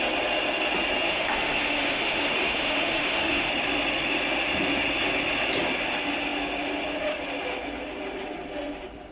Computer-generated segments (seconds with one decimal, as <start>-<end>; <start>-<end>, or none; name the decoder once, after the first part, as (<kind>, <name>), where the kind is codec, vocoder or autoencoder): 1.1-3.5 (autoencoder, DAC-VAE)